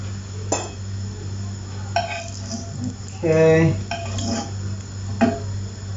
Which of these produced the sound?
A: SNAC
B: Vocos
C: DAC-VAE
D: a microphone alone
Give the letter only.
D